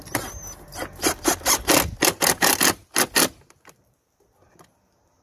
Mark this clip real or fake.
real